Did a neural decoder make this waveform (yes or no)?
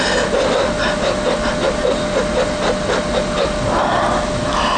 no